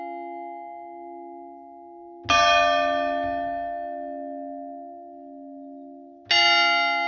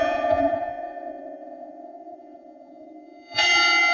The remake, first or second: second